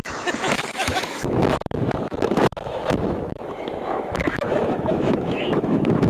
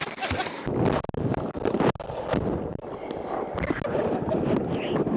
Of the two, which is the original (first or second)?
second